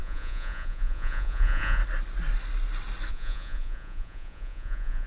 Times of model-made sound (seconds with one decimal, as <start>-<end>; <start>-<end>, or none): 0.0-1.8; 3.1-5.1